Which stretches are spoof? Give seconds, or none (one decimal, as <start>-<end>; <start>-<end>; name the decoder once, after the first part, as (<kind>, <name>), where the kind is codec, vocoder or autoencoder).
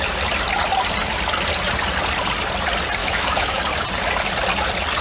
3.0-3.6 (autoencoder, DAC-VAE)